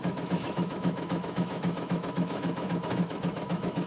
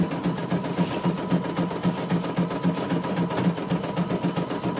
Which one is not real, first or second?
first